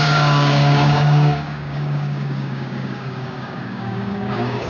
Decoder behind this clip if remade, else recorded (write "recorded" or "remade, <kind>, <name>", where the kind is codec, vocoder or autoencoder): remade, codec, DAC